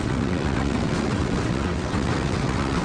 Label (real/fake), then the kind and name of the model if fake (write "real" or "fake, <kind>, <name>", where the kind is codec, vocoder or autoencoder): fake, vocoder, WaveNeXt